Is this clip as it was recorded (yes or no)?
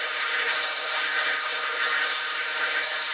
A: no